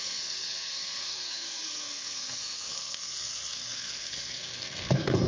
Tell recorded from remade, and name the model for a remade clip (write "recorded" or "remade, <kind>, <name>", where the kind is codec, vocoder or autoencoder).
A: remade, codec, SNAC